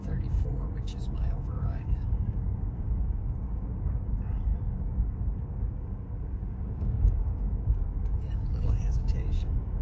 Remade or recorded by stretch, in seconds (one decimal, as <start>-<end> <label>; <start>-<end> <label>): 0.0-9.8 remade